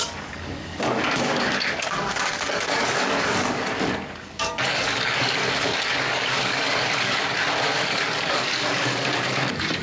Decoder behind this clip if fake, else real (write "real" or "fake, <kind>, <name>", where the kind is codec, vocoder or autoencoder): fake, codec, DAC